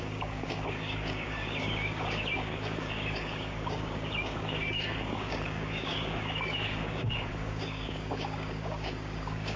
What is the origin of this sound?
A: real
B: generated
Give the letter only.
B